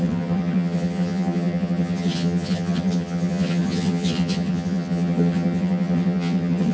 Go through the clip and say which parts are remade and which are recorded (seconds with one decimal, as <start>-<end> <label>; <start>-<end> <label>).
0.0-6.7 remade